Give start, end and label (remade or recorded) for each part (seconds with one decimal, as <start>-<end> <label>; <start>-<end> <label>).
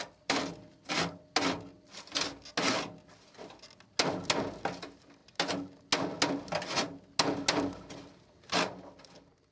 0.0-9.5 recorded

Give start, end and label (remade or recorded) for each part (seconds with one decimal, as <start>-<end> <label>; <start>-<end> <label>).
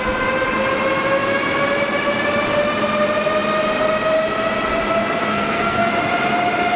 0.0-5.2 recorded; 5.2-5.9 remade; 5.9-6.8 recorded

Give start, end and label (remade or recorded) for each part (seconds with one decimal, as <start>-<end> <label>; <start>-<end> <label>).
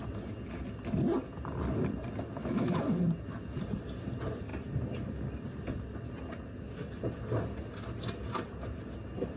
0.0-2.4 recorded; 2.4-3.0 remade; 3.0-9.4 recorded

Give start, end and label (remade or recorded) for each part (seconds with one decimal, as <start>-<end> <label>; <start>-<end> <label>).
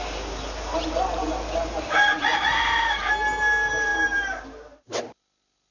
0.0-2.3 recorded; 2.3-3.1 remade; 3.1-3.9 recorded; 3.9-5.0 remade; 5.0-5.7 recorded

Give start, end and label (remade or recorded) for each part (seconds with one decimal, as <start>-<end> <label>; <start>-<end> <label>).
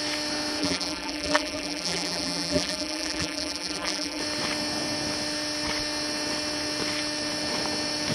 0.0-0.6 recorded; 0.6-4.2 remade; 4.2-8.1 recorded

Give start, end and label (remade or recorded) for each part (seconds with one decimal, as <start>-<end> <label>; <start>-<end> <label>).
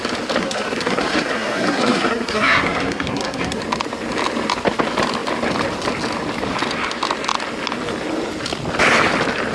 0.0-0.4 recorded; 0.4-3.6 remade; 3.6-9.5 recorded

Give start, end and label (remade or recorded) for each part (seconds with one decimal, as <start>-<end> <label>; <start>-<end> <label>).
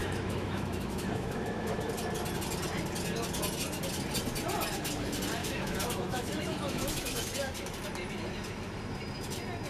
0.0-1.9 remade; 1.9-5.4 recorded; 5.4-7.3 remade; 7.3-9.7 recorded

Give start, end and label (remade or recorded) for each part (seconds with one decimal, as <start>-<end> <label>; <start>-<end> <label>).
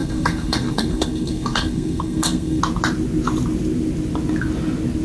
0.0-2.6 remade; 2.6-5.0 recorded